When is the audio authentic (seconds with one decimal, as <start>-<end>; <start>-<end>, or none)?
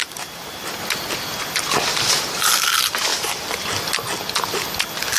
0.8-1.9; 2.4-3.1; 3.9-5.2